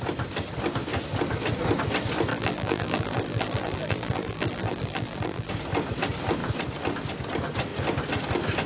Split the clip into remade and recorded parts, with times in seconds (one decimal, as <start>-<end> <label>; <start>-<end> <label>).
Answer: 0.0-2.3 recorded; 2.3-5.5 remade; 5.5-8.7 recorded